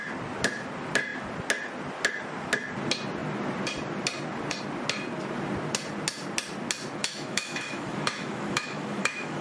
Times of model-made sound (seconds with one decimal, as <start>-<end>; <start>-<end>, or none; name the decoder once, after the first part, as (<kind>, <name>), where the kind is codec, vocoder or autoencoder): 7.0-9.4 (autoencoder, DAC-VAE)